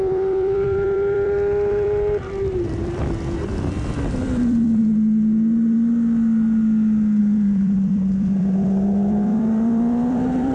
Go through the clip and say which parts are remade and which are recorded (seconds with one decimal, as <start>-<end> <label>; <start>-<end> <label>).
0.0-4.8 remade; 4.8-7.2 recorded; 7.2-10.5 remade

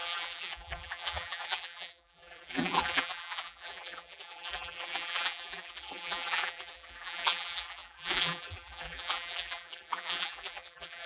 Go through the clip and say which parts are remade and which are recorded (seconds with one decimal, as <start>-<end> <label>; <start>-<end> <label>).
0.0-11.1 remade

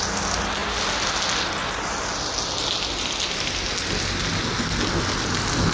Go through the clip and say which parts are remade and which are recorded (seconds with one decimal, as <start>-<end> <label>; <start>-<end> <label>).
0.0-5.7 recorded

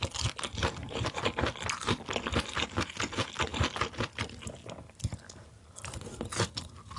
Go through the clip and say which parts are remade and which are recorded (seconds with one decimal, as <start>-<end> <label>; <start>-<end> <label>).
0.0-0.6 recorded; 0.6-1.2 remade; 1.2-7.0 recorded

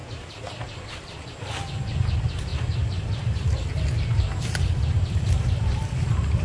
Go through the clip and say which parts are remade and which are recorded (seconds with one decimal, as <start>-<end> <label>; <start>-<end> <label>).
0.0-6.4 remade

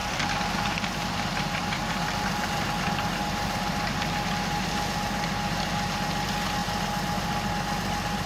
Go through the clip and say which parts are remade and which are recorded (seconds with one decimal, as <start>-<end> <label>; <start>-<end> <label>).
0.0-2.9 remade; 2.9-8.3 recorded

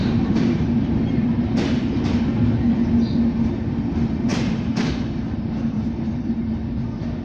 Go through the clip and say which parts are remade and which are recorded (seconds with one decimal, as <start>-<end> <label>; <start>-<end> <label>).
0.0-2.2 remade; 2.2-4.3 recorded; 4.3-6.5 remade; 6.5-7.2 recorded